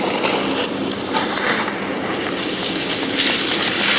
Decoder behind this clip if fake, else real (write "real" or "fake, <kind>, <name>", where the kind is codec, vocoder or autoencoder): real